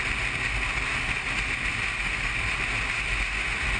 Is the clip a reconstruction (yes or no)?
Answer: no